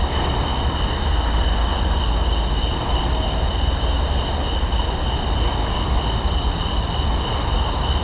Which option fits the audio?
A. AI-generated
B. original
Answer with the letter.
B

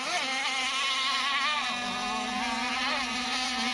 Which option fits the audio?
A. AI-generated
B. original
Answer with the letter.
B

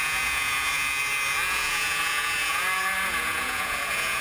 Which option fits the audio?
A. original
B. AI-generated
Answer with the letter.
B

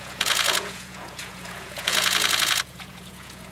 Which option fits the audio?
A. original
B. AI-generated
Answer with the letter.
B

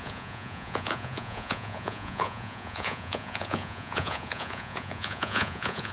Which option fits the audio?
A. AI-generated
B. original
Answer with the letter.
A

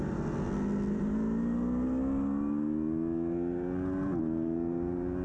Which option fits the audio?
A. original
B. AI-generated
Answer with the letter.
A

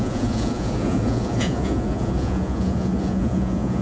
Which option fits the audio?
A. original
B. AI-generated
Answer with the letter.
B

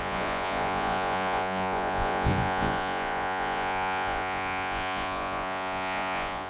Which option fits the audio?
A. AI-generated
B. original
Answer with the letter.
A